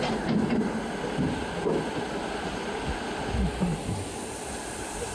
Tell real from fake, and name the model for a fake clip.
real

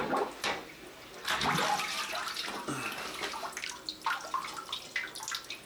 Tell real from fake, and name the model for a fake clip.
real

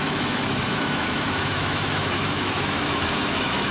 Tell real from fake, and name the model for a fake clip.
fake, autoencoder, DAC-VAE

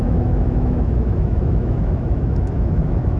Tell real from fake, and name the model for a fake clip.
fake, autoencoder, DAC-VAE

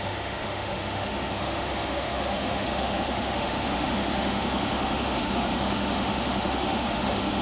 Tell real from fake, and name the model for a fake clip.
fake, autoencoder, DAC-VAE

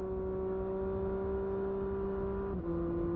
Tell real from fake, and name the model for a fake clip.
real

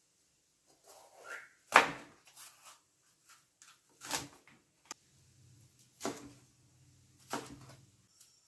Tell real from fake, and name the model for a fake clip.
real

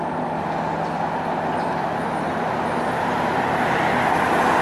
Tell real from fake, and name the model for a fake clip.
real